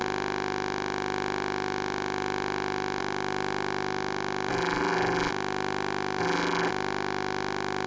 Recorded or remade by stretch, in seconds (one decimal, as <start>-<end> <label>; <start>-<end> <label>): 0.0-4.5 recorded; 4.5-5.3 remade; 5.3-6.2 recorded; 6.2-6.7 remade; 6.7-7.9 recorded